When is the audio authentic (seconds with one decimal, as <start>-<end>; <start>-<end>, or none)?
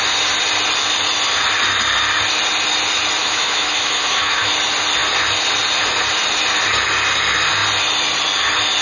0.0-3.2; 4.5-8.8